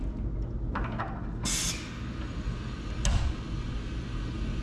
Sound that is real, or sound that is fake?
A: real